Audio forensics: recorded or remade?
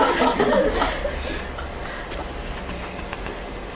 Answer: recorded